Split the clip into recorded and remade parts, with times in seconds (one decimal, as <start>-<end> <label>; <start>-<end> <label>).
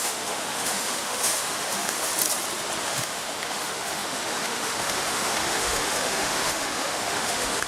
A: 0.0-2.1 remade; 2.1-2.8 recorded; 2.8-7.7 remade